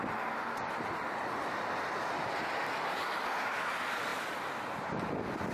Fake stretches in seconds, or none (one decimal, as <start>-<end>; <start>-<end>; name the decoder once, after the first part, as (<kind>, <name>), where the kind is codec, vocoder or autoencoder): none